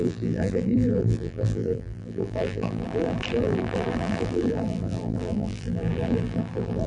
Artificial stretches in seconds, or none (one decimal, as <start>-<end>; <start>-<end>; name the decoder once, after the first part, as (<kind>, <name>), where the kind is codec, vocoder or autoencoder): 0.0-6.9 (vocoder, BigVGAN v2)